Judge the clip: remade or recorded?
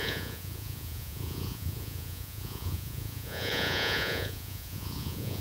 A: remade